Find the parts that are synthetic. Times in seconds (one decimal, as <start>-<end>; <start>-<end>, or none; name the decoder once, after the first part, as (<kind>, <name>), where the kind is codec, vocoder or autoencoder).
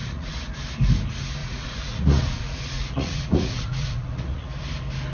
0.0-0.5 (vocoder, Vocos); 1.4-4.5